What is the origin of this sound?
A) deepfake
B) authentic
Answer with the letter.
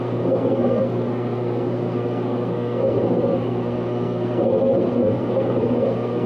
A